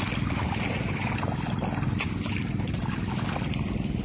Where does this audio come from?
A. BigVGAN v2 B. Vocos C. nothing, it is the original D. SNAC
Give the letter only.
C